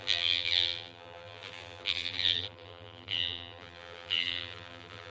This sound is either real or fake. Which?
fake